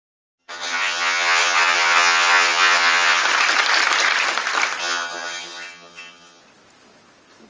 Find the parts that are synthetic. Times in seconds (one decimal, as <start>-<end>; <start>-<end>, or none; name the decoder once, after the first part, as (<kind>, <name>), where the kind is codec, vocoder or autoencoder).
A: 0.4-3.2 (vocoder, HiFi-GAN); 4.8-6.4